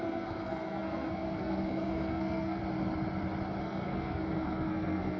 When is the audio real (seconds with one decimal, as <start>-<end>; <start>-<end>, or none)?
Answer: 2.6-3.6